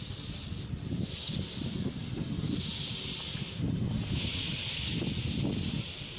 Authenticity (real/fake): real